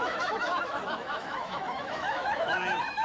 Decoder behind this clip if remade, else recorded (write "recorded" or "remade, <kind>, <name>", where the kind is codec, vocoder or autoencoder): remade, autoencoder, DAC-VAE